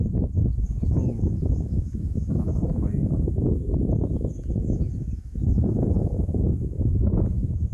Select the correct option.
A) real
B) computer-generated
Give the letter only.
B